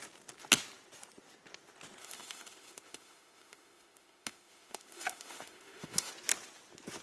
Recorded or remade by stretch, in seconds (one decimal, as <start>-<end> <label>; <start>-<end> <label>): 0.0-2.0 recorded; 2.0-6.1 remade; 6.1-7.0 recorded